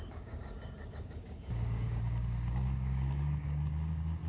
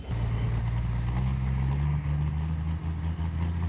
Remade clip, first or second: first